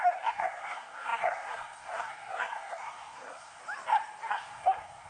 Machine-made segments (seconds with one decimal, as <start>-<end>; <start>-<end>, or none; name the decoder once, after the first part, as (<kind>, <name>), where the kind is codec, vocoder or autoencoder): 0.0-3.6 (codec, SNAC); 4.3-5.1